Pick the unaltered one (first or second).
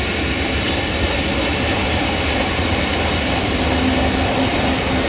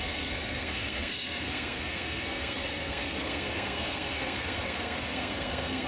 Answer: first